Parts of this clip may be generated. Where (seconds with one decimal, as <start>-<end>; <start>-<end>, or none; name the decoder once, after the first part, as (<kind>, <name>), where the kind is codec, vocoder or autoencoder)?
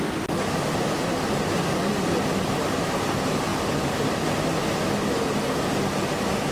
none